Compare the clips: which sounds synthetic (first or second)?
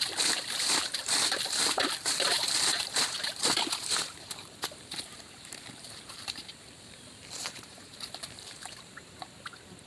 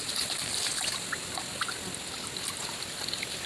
first